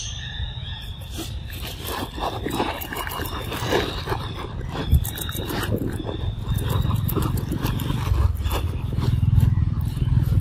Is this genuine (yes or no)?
no